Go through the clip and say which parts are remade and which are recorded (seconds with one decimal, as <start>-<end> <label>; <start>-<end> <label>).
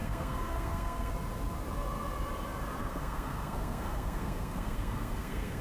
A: 0.0-1.1 remade; 1.1-2.8 recorded; 2.8-5.6 remade